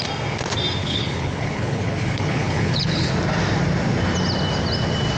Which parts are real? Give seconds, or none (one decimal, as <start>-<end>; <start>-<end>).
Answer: 0.0-0.8; 3.1-5.2